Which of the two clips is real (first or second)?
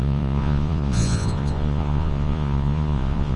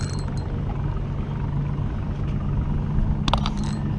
second